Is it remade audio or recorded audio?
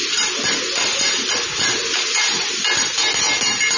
recorded